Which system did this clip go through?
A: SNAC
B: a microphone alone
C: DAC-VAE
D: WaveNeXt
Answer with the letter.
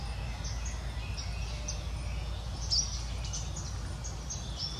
B